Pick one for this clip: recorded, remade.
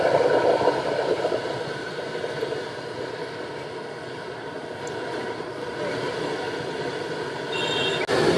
recorded